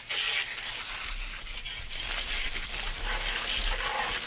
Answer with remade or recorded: recorded